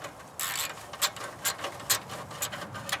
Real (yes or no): yes